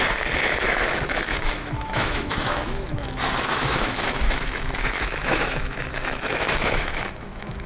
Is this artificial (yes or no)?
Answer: yes